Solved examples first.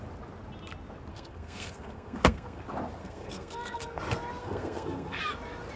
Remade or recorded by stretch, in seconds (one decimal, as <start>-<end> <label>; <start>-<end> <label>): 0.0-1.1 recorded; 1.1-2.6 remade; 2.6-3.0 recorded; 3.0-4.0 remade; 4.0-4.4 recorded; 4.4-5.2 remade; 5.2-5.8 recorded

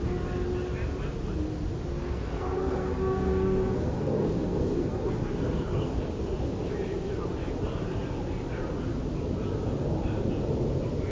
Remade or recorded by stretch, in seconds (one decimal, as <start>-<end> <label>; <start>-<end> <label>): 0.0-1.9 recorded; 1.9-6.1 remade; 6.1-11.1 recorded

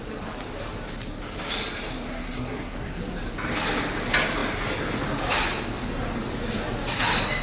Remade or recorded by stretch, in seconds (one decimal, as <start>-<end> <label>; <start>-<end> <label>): 0.0-2.1 recorded; 2.1-3.0 remade; 3.0-7.4 recorded